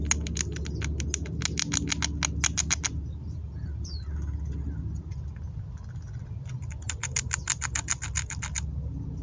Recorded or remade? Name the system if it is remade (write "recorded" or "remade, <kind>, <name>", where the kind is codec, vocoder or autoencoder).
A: recorded